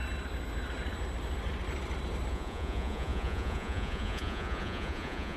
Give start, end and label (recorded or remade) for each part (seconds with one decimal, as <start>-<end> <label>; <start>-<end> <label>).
0.0-2.3 recorded; 2.3-5.4 remade